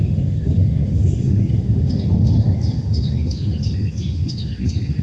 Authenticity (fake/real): fake